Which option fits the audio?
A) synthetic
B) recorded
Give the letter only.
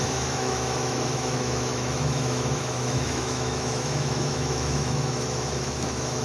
A